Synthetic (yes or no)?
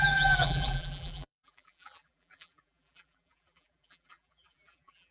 yes